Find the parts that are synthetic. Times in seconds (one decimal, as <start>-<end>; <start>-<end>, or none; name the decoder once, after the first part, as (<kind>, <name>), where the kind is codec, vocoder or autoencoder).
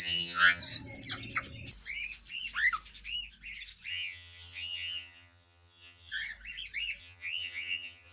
0.0-0.6 (vocoder, HiFi-GAN); 3.9-6.1; 7.0-8.1